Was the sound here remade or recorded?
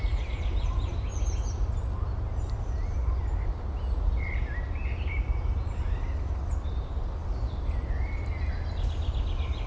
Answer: recorded